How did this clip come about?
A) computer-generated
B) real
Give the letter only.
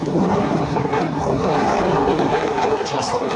A